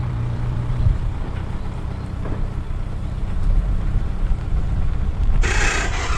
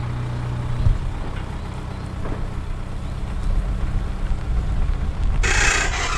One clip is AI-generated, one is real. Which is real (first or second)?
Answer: second